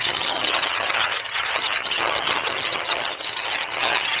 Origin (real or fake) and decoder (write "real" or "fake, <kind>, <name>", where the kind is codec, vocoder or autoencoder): fake, vocoder, HiFi-GAN